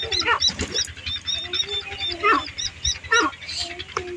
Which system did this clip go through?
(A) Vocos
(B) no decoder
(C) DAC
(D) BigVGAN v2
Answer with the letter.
B